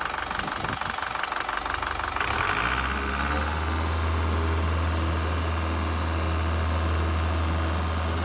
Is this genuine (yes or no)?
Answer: yes